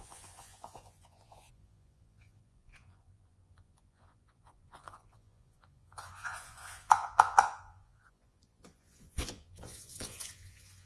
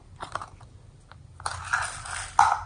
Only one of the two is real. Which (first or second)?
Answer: second